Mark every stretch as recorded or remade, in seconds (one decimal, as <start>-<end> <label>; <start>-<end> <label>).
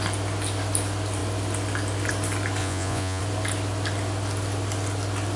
0.0-2.6 recorded; 2.6-3.2 remade; 3.2-5.4 recorded